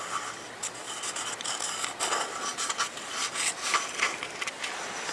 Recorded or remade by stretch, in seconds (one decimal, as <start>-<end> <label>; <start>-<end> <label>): 0.0-5.1 recorded